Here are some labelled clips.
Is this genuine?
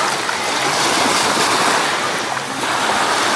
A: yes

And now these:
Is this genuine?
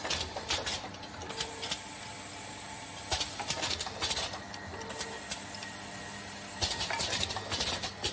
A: yes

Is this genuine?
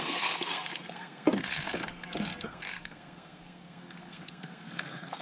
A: no